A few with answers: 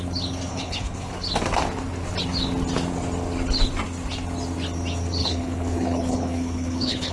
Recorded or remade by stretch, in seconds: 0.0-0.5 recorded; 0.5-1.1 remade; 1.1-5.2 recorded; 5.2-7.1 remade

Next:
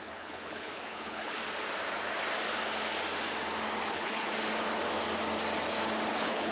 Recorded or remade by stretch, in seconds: 0.0-1.4 remade; 1.4-3.9 recorded; 3.9-4.3 remade; 4.3-6.1 recorded; 6.1-6.5 remade

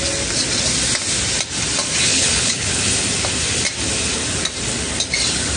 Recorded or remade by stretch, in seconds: 0.0-2.1 recorded; 2.1-2.8 remade; 2.8-5.6 recorded